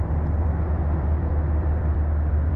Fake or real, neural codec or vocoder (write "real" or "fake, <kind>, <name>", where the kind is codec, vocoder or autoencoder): fake, vocoder, BigVGAN v2